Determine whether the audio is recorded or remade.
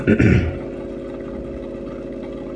recorded